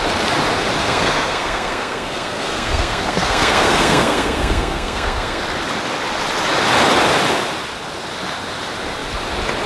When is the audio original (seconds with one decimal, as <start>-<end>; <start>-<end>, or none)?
0.0-0.8; 5.4-9.7